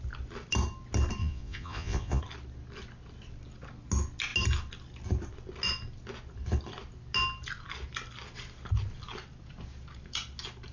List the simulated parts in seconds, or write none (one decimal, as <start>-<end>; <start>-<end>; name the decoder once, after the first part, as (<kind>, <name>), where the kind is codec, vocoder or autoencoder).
1.2-2.2 (vocoder, Vocos)